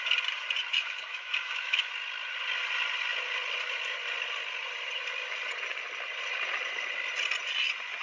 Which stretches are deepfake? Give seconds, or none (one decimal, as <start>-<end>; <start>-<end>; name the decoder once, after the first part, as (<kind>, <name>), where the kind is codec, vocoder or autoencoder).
0.7-1.9 (autoencoder, DAC-VAE)